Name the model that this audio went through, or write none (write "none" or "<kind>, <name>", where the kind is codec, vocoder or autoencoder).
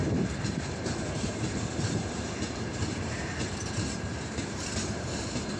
vocoder, BigVGAN v2